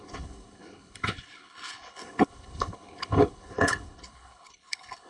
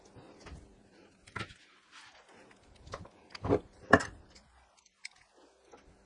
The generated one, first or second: first